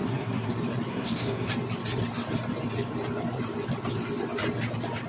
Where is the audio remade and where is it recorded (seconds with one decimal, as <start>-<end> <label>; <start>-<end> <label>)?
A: 0.0-0.5 remade; 0.5-0.9 recorded; 0.9-1.5 remade; 1.5-5.1 recorded